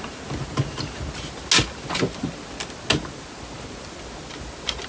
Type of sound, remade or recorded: recorded